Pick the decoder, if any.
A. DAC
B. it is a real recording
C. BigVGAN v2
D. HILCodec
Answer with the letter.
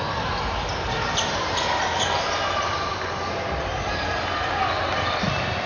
B